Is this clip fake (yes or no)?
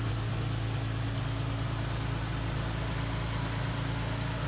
no